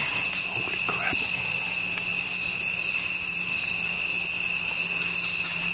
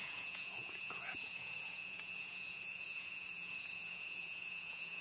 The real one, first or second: first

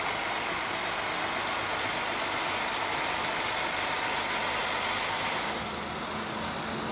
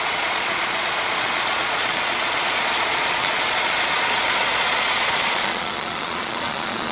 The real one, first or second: first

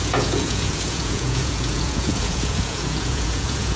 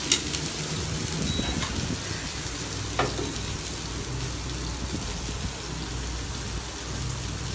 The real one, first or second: second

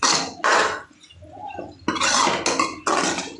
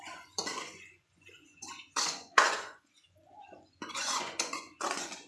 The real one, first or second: first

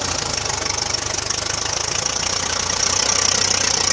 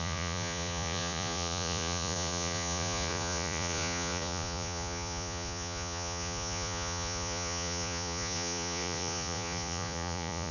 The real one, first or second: first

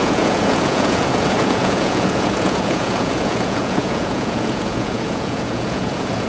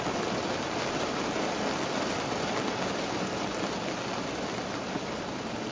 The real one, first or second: second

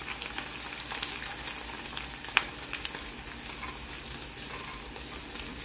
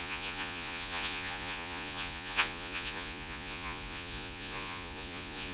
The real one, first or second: first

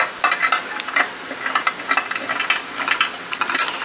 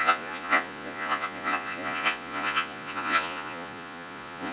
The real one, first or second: first